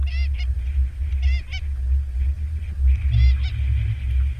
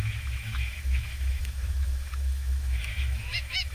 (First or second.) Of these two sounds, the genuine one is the first